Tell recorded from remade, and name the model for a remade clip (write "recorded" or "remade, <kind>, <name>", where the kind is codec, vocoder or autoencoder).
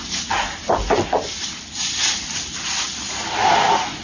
recorded